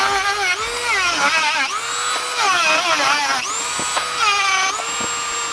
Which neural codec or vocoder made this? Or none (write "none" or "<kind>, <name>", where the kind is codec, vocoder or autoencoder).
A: none